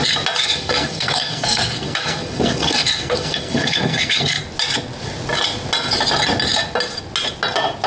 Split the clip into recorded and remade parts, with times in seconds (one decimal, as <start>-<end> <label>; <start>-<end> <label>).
0.0-0.4 recorded; 0.4-4.4 remade; 4.4-7.9 recorded